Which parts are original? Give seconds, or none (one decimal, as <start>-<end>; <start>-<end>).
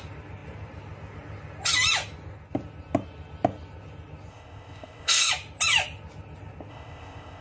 0.0-4.3; 5.3-6.7